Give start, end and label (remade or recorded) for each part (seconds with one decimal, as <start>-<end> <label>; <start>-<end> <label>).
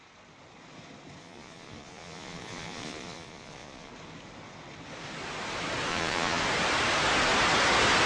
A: 0.0-1.2 recorded; 1.2-3.9 remade; 3.9-5.9 recorded; 5.9-6.4 remade; 6.4-8.1 recorded